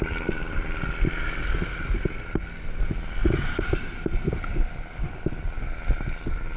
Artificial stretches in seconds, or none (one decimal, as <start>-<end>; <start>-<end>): none